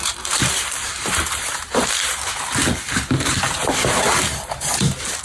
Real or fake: fake